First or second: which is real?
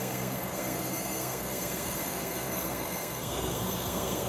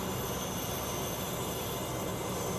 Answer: second